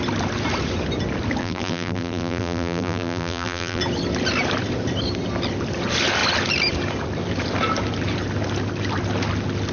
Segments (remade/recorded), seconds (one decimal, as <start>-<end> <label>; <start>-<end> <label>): 0.0-1.4 recorded; 1.4-3.8 remade; 3.8-9.7 recorded